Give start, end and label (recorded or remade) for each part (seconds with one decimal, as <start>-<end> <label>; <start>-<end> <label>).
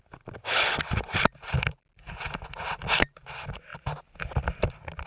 0.0-5.1 recorded